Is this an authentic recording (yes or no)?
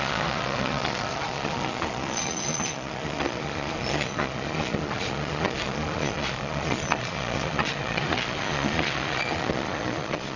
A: no